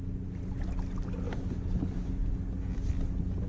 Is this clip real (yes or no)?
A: yes